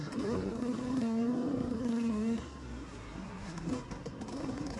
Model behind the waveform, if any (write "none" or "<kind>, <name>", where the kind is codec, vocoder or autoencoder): codec, SNAC